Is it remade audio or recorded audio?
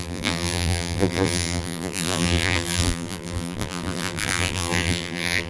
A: remade